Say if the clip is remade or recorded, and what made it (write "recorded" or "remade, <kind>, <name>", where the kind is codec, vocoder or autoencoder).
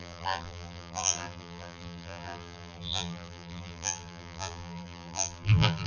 remade, vocoder, BigVGAN v2